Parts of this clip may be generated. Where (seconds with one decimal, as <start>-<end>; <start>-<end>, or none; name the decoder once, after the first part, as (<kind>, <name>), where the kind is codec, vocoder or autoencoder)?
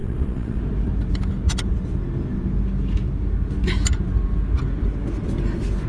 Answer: 0.0-0.6 (vocoder, WaveNeXt)